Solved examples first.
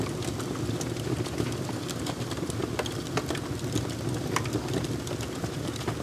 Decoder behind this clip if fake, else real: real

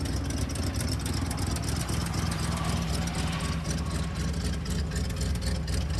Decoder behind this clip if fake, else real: real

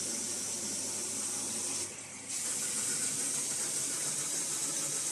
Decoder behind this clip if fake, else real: fake, vocoder, BigVGAN v2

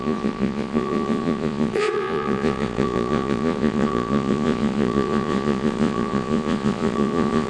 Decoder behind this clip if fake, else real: fake, vocoder, Vocos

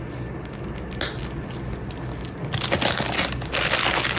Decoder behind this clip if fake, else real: real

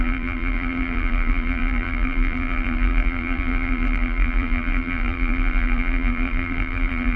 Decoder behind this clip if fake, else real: fake, vocoder, BigVGAN v2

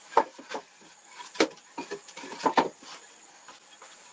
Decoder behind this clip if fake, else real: real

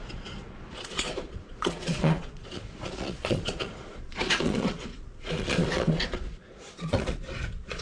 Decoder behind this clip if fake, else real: fake, vocoder, Vocos